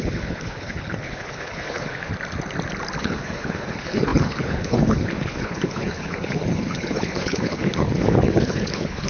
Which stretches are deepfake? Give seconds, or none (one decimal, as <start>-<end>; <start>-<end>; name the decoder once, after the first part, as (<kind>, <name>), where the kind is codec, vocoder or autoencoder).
0.0-2.1 (codec, HILCodec); 3.0-9.1